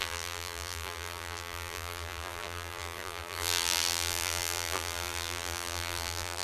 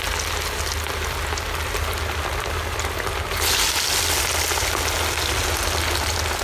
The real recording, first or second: second